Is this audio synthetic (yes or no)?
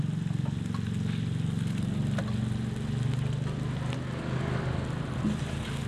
no